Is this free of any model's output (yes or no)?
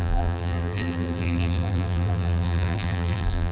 no